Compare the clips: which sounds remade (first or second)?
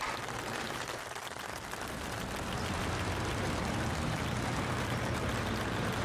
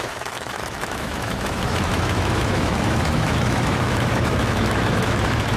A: second